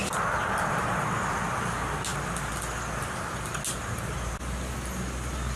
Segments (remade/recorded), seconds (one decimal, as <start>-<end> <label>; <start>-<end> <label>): 0.0-5.6 recorded

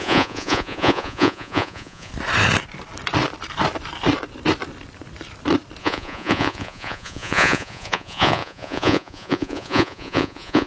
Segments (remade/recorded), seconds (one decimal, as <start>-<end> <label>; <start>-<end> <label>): 0.0-2.1 remade; 2.1-5.8 recorded; 5.8-10.7 remade

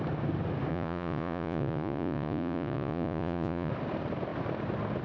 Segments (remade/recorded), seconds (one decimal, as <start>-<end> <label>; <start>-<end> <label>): 0.0-0.7 recorded; 0.7-3.7 remade; 3.7-5.0 recorded

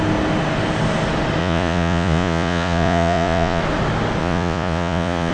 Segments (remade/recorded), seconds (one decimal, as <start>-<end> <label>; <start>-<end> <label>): 0.0-1.4 recorded; 1.4-3.6 remade; 3.6-4.2 recorded; 4.2-5.3 remade

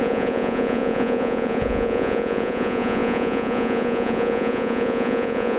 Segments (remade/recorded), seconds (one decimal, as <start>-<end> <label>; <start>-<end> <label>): 0.0-5.6 remade

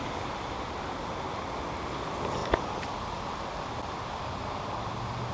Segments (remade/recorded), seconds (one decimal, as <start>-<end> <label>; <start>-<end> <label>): 0.0-5.3 recorded

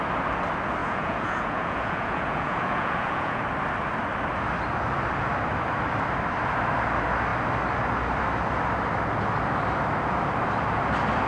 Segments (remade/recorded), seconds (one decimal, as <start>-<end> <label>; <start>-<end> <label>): 0.0-0.8 recorded; 0.8-3.4 remade; 3.4-11.3 recorded